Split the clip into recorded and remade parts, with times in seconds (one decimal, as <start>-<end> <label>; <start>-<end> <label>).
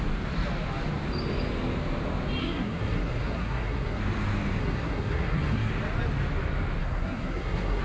0.0-2.4 recorded; 2.4-4.0 remade; 4.0-4.6 recorded; 4.6-5.7 remade; 5.7-6.8 recorded; 6.8-7.8 remade